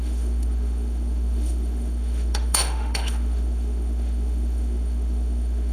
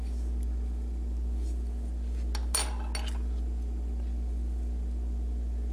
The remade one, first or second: first